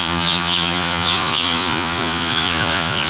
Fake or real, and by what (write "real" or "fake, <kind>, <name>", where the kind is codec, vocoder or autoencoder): fake, vocoder, Vocos